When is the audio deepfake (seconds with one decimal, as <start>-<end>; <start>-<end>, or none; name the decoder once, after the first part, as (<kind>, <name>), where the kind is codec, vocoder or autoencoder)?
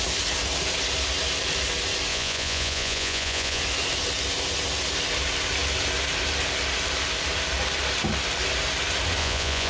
2.1-3.6 (vocoder, Vocos); 9.2-9.7